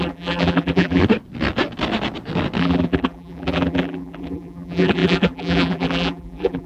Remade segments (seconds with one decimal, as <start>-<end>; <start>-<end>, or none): 0.0-1.0; 2.6-6.7